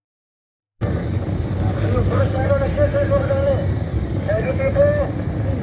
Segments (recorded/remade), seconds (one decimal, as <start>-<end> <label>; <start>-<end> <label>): 0.0-0.4 recorded; 0.4-2.6 remade; 2.6-3.9 recorded; 3.9-4.6 remade; 4.6-5.6 recorded